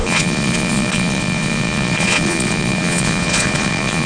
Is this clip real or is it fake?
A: fake